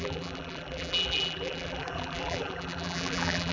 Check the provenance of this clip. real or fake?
fake